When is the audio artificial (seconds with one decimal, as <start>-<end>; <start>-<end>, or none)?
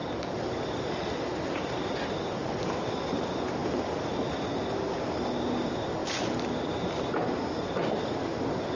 none